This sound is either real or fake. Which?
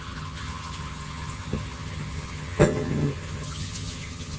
fake